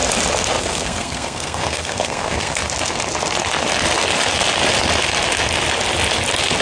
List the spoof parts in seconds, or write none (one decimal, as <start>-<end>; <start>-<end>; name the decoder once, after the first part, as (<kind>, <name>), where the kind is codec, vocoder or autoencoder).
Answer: 0.6-2.6 (codec, SNAC)